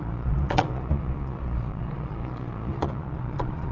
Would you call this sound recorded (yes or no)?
no